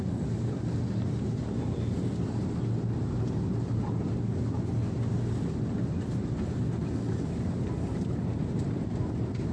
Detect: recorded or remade recorded